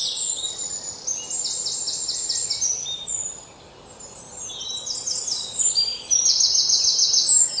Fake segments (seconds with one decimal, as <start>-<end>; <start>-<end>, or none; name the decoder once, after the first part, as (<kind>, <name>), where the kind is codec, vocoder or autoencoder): 0.0-0.7 (vocoder, Vocos)